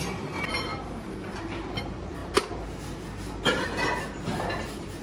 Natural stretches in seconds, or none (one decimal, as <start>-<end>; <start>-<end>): 0.0-0.7; 1.4-5.0